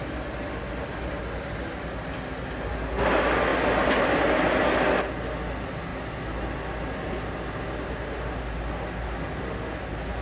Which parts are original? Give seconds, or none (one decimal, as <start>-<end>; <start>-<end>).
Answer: 0.0-10.2